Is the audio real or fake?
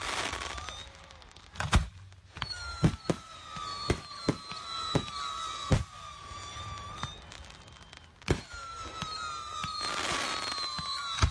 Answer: real